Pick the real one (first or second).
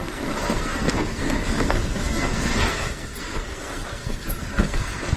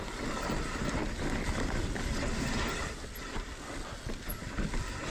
second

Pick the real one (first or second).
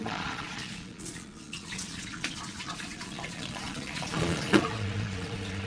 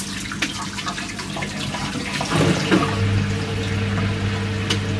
second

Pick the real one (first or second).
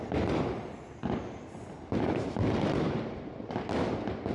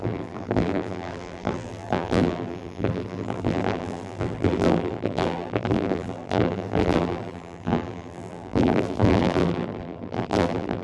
first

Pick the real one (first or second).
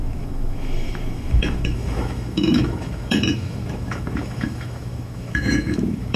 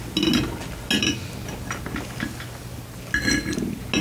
second